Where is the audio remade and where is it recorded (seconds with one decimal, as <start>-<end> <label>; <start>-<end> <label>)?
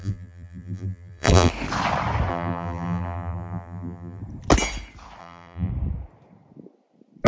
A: 0.0-1.5 remade; 1.5-2.3 recorded; 2.3-4.2 remade; 4.2-5.2 recorded; 5.2-5.7 remade; 5.7-7.3 recorded